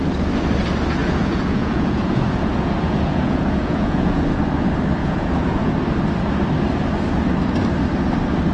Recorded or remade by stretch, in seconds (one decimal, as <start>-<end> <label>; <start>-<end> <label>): 0.0-1.0 recorded; 1.0-4.4 remade; 4.4-5.0 recorded; 5.0-5.7 remade; 5.7-8.5 recorded

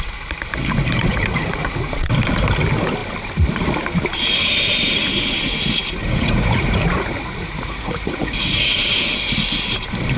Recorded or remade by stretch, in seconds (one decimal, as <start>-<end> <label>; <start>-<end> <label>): 0.0-1.6 recorded; 1.6-2.1 remade; 2.1-6.0 recorded; 6.0-8.8 remade; 8.8-10.2 recorded